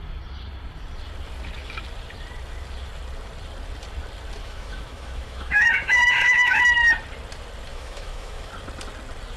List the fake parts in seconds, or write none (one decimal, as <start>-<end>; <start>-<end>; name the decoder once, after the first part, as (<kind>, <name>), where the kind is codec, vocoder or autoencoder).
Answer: 4.4-6.6 (autoencoder, DAC-VAE); 7.7-8.5